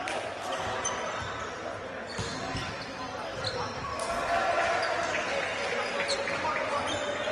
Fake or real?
real